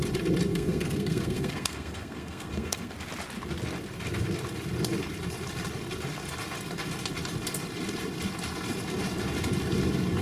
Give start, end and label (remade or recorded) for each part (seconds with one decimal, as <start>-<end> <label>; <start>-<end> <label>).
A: 0.0-0.5 recorded; 0.5-2.9 remade; 2.9-10.2 recorded